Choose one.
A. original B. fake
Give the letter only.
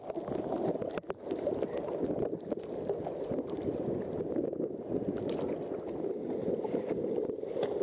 A